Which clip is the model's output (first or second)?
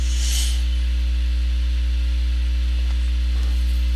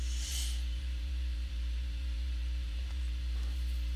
second